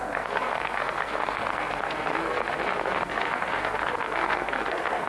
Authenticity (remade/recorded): remade